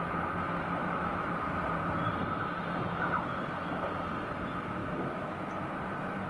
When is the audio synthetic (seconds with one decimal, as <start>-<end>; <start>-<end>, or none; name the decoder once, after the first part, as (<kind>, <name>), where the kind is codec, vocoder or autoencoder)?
0.8-1.6 (autoencoder, DAC-VAE); 4.8-5.3